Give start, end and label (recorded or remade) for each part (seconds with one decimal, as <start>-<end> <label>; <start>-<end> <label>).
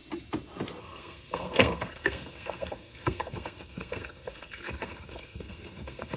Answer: 0.0-0.8 recorded; 0.8-6.2 remade